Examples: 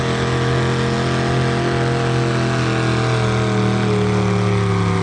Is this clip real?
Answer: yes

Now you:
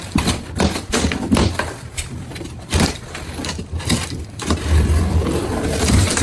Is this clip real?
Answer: no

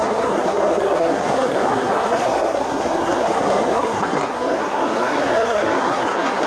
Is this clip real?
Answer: no